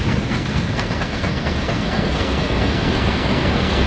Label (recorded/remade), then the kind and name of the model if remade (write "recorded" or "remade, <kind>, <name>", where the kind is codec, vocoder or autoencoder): remade, codec, SNAC